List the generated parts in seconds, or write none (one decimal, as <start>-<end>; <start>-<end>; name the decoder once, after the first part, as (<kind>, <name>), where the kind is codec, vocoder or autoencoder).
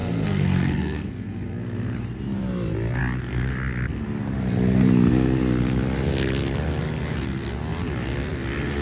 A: 0.0-2.2 (codec, SNAC)